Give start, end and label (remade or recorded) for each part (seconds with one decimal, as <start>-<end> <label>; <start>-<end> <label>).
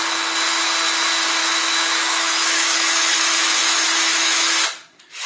0.0-1.4 recorded; 1.4-4.5 remade; 4.5-5.3 recorded